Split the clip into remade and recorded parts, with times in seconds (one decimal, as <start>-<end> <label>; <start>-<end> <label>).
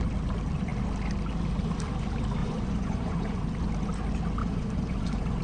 0.0-2.4 recorded; 2.4-3.4 remade; 3.4-4.4 recorded; 4.4-5.4 remade